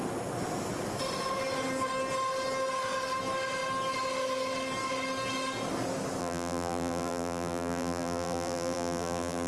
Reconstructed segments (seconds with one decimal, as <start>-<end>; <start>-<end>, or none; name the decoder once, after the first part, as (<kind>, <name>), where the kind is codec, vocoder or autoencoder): 6.2-9.5 (vocoder, BigVGAN v2)